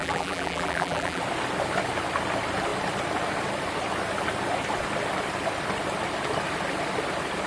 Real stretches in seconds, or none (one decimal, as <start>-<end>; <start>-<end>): 1.2-7.5